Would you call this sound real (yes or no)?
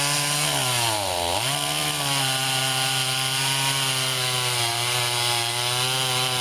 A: yes